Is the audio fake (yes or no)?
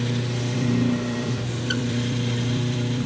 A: yes